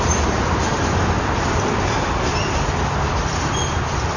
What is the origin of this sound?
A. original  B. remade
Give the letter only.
A